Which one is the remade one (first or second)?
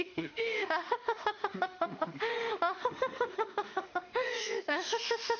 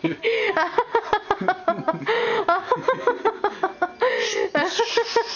first